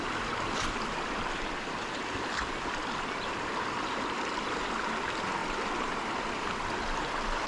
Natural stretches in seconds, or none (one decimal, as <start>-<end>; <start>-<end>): 0.0-5.4; 6.3-7.5